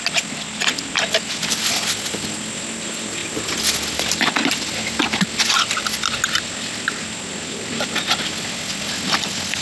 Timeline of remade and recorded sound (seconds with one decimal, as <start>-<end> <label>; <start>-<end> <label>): 0.0-9.6 recorded